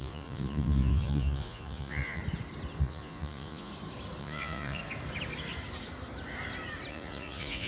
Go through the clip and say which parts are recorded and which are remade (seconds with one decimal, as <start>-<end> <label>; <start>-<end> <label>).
0.0-2.2 remade; 2.2-2.8 recorded; 2.8-3.7 remade; 3.7-4.2 recorded; 4.2-4.8 remade; 4.8-6.9 recorded; 6.9-7.7 remade